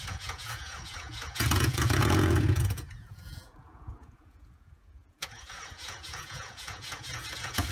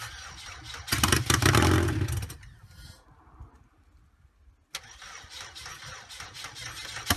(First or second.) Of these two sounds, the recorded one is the second